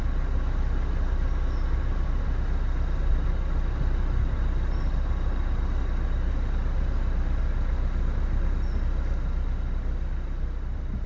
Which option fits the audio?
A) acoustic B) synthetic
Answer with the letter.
A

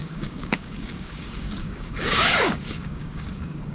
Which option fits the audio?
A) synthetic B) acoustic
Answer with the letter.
A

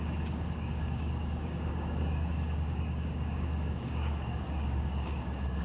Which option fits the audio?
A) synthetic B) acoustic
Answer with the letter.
A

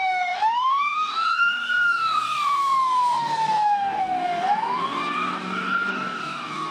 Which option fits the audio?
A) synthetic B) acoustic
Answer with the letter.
A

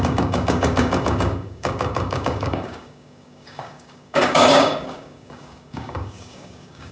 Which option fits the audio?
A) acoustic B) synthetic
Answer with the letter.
B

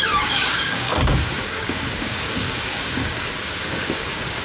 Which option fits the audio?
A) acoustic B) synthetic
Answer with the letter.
B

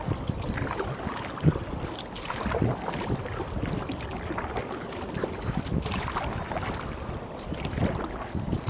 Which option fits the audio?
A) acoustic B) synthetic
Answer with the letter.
A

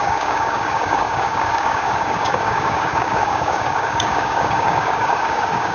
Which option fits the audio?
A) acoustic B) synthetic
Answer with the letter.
B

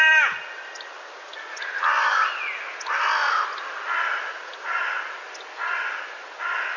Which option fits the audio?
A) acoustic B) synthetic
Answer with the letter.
A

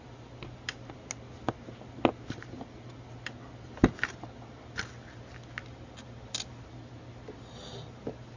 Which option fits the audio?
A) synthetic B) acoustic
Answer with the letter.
B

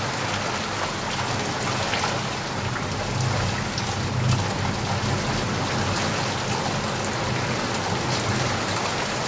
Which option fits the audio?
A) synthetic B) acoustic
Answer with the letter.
B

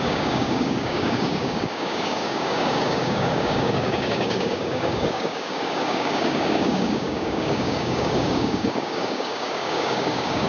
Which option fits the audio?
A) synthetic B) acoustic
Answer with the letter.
A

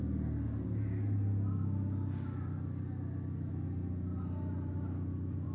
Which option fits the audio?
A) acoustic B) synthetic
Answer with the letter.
A